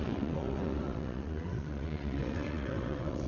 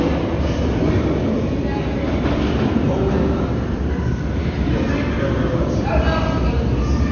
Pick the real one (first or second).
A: second